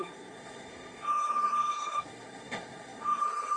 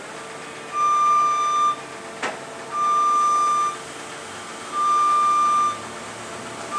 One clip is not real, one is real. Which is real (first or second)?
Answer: second